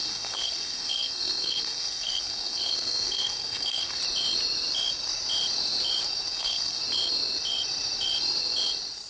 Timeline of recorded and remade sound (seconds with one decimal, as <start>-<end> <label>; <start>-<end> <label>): 0.0-4.0 remade; 4.0-6.3 recorded; 6.3-6.8 remade; 6.8-9.1 recorded